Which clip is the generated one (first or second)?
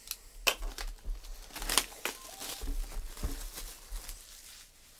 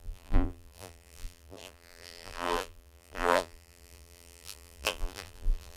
second